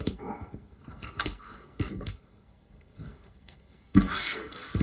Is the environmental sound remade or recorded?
remade